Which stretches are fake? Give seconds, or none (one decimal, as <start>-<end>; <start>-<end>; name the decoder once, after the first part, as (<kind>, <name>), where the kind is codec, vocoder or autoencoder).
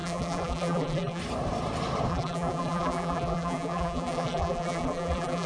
0.0-1.2 (vocoder, BigVGAN v2); 2.1-5.5